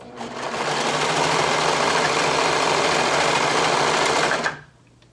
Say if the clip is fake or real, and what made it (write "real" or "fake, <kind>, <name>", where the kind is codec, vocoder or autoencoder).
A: real